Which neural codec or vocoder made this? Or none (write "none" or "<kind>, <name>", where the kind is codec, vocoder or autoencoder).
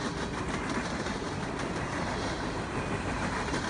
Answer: vocoder, BigVGAN v2